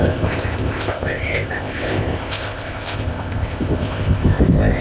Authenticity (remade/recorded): remade